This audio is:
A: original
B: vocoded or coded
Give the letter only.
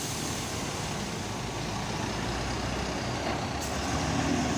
A